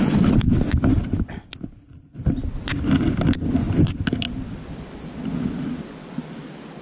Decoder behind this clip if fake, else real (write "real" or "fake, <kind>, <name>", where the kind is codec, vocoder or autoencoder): real